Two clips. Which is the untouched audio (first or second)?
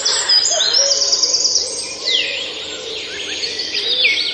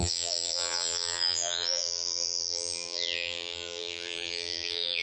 first